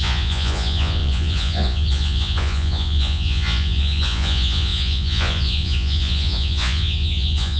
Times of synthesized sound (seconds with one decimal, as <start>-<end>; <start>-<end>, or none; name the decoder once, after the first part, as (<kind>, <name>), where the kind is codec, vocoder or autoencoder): 0.0-7.6 (vocoder, Vocos)